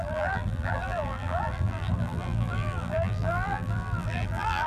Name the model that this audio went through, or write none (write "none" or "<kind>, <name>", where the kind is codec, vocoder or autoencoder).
vocoder, BigVGAN v2